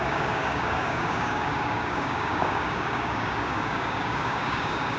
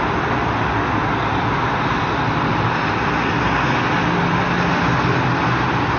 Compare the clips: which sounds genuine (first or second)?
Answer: second